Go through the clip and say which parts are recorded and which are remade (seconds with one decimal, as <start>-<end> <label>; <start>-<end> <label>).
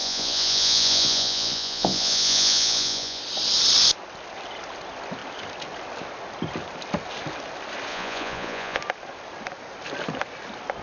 0.0-3.2 remade; 3.2-7.9 recorded; 7.9-8.8 remade; 8.8-10.8 recorded